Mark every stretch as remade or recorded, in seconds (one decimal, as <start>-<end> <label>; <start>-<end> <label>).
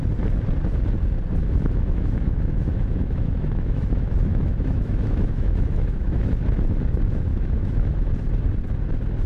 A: 0.0-1.4 recorded; 1.4-6.2 remade; 6.2-7.3 recorded; 7.3-8.1 remade; 8.1-9.3 recorded